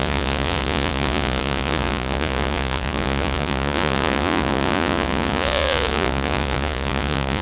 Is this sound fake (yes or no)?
yes